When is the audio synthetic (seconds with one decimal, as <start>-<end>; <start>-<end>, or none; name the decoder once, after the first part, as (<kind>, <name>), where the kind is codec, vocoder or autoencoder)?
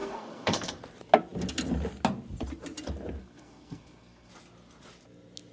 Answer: 0.0-0.7 (codec, SNAC); 3.2-4.3